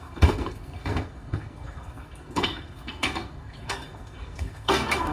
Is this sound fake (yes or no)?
yes